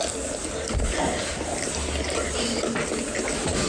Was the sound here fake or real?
real